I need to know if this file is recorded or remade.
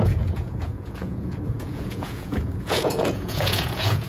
remade